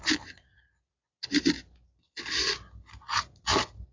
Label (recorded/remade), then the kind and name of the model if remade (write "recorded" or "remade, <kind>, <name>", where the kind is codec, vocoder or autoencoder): recorded